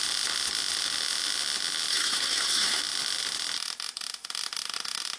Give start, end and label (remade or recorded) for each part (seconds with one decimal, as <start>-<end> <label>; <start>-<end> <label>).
0.0-1.9 recorded; 1.9-2.8 remade; 2.8-5.2 recorded